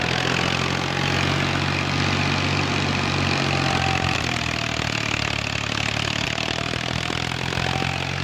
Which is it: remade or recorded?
recorded